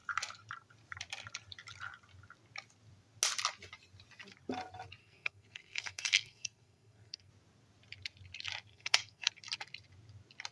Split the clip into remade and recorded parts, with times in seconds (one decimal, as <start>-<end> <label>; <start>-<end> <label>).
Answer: 0.0-5.0 recorded; 5.0-7.3 remade; 7.3-8.7 recorded; 8.7-9.3 remade; 9.3-10.5 recorded